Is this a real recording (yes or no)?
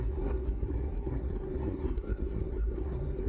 no